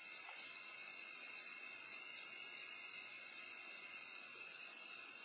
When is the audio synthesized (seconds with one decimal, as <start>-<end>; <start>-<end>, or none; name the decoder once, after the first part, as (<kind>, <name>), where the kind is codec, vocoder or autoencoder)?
0.0-5.2 (vocoder, Vocos)